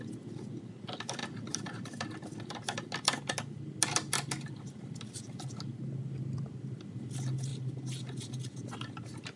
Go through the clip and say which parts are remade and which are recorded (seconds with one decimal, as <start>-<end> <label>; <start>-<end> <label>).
0.0-9.4 recorded